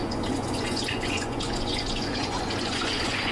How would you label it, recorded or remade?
remade